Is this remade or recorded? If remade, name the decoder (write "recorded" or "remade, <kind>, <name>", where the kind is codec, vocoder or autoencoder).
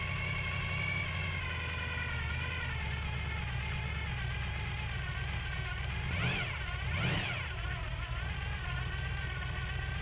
recorded